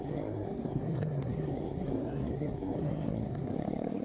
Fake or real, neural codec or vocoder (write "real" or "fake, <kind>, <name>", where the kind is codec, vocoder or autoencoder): fake, codec, SNAC